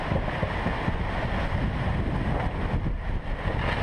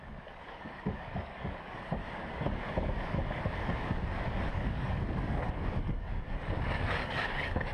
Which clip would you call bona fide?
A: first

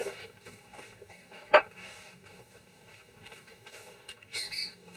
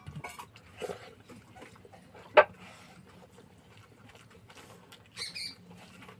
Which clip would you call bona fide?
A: second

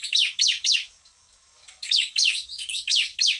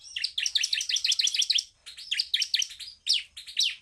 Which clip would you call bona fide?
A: second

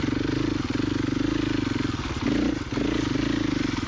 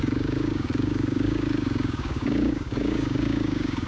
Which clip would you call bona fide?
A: first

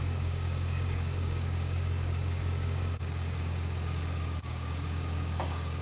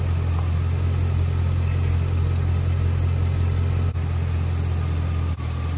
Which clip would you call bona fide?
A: second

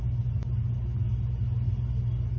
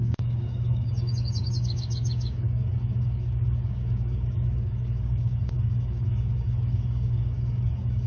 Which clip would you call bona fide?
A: first